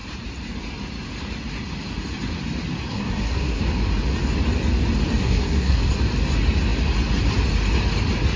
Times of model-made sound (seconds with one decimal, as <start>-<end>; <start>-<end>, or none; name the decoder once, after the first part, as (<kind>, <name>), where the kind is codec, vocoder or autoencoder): 2.9-3.6 (codec, SNAC); 5.2-5.9